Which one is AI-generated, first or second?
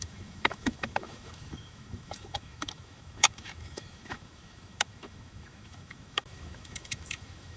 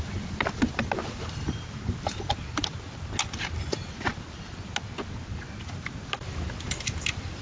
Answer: first